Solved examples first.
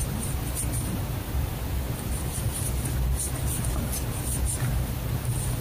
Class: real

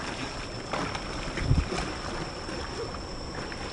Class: real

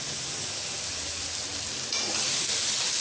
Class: real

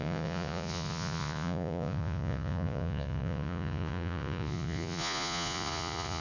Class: fake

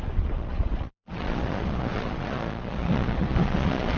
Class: fake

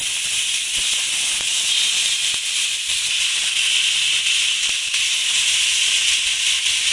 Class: real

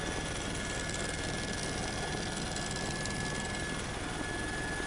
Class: real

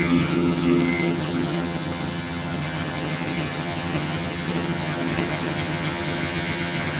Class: fake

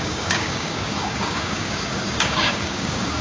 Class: fake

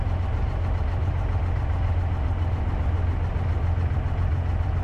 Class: real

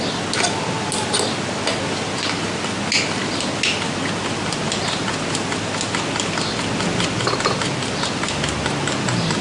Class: real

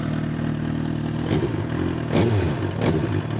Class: real